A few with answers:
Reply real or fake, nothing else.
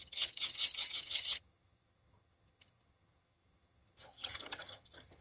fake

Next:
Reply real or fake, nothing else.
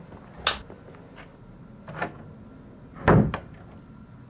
real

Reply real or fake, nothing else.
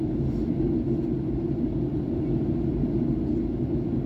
real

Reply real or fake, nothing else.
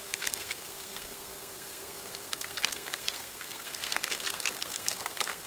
fake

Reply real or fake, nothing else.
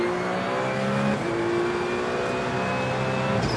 real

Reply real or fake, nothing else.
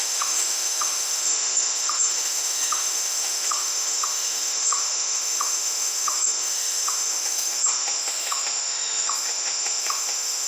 fake